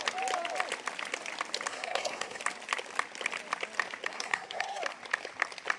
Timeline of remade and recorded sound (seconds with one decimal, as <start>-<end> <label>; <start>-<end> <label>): 0.0-1.7 recorded; 1.7-2.4 remade; 2.4-4.1 recorded; 4.1-4.8 remade; 4.8-5.8 recorded